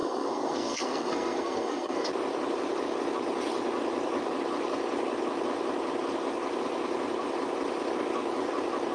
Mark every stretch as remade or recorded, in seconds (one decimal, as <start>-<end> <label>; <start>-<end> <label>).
0.0-2.1 remade; 2.1-8.9 recorded